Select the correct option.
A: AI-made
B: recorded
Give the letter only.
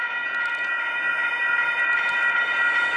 B